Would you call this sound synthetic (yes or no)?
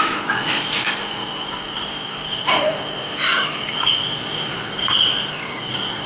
yes